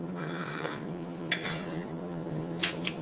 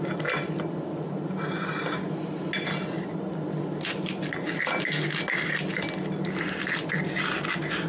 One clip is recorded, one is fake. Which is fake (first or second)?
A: first